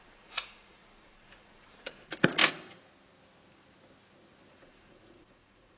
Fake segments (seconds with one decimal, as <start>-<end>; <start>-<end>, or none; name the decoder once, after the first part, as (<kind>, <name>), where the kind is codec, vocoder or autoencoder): 0.0-2.4 (vocoder, Vocos); 4.6-5.8